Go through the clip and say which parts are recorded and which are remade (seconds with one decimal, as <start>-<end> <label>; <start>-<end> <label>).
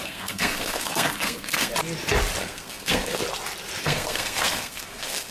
0.0-1.7 remade; 1.7-2.4 recorded; 2.4-3.2 remade; 3.2-3.8 recorded; 3.8-5.3 remade